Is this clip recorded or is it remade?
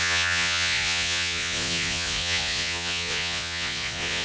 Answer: remade